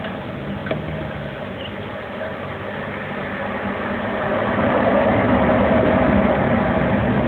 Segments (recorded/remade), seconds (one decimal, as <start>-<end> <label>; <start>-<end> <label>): 0.0-7.3 recorded